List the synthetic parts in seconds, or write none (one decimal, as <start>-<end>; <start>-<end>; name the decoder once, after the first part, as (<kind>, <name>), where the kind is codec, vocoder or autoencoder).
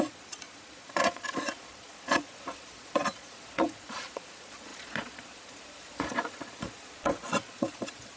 0.0-8.2 (vocoder, Vocos)